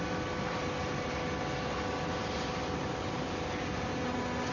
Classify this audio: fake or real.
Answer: real